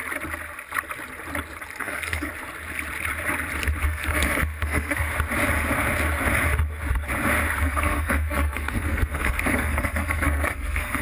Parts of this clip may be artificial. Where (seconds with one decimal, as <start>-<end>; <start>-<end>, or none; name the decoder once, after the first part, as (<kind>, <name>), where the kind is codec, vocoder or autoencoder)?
1.8-2.3 (codec, SNAC); 3.8-5.1; 7.6-11.0